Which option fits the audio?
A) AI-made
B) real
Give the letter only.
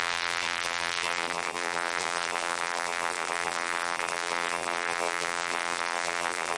A